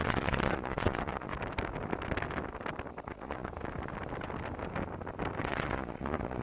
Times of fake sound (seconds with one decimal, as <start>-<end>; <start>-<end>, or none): 0.0-1.3; 3.0-3.5; 5.4-6.4